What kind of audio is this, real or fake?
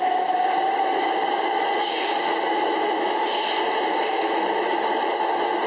fake